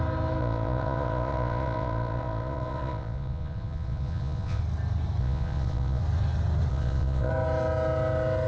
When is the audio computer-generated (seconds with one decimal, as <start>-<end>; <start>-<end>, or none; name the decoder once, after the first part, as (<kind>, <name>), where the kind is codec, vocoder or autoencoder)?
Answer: 0.4-4.6 (vocoder, Vocos); 5.2-6.0; 6.7-7.3